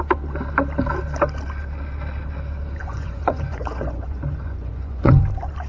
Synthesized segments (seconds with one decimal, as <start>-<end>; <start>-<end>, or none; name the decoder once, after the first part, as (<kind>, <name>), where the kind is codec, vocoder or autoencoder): 2.8-5.2 (vocoder, Vocos)